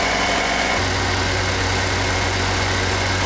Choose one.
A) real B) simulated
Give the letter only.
B